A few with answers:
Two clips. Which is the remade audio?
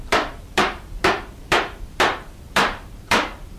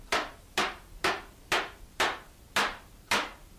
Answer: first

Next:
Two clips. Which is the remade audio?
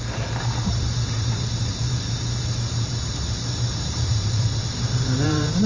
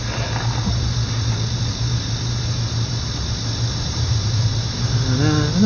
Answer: first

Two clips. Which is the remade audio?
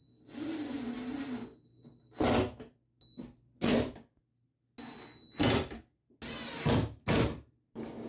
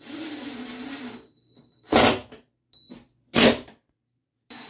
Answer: second